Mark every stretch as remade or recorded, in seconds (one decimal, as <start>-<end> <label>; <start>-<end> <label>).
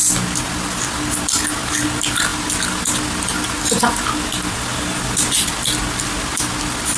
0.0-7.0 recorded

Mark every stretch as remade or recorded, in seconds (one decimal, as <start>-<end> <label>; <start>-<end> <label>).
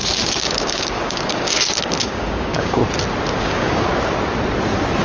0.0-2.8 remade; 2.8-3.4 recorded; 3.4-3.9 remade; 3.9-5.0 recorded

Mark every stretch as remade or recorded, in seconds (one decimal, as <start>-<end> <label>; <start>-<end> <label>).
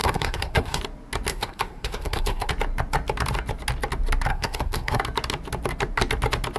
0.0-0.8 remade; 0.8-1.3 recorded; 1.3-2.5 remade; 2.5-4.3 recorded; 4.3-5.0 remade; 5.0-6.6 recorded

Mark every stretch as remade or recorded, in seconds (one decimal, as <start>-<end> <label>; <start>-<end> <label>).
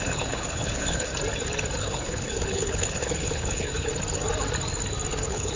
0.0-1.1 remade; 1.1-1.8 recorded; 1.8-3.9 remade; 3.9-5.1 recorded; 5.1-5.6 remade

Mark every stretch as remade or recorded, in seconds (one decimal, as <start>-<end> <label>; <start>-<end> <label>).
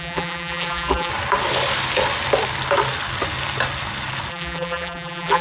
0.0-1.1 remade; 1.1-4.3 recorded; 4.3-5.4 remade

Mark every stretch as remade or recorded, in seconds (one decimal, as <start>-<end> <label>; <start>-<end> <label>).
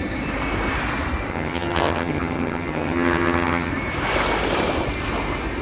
0.0-1.3 recorded; 1.3-3.7 remade; 3.7-5.6 recorded